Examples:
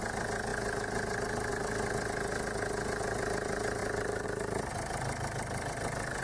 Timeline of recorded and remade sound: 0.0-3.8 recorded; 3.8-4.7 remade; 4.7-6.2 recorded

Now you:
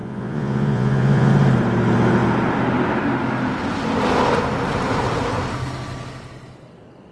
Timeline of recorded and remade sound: 0.0-1.3 remade; 1.3-7.1 recorded

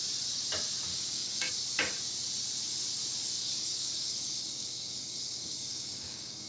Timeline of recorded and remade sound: 0.0-0.9 recorded; 0.9-1.5 remade; 1.5-3.6 recorded; 3.6-6.5 remade

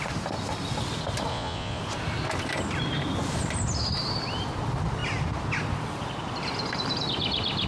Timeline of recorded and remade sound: 0.0-1.3 recorded; 1.3-1.8 remade; 1.8-7.7 recorded

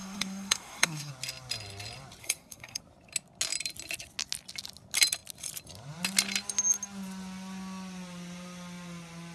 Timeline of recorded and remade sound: 0.0-1.1 remade; 1.1-2.2 recorded; 2.2-2.8 remade; 2.8-9.3 recorded